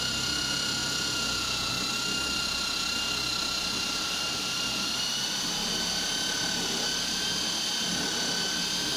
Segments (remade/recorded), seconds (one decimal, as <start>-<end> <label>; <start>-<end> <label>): 0.0-0.8 recorded; 0.8-1.7 remade; 1.7-9.0 recorded